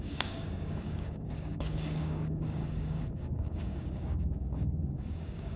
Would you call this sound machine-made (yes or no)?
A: yes